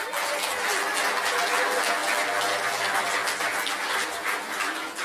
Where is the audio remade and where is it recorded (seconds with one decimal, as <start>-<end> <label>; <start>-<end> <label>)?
0.0-5.0 recorded